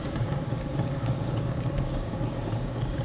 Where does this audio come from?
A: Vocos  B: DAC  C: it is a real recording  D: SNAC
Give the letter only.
B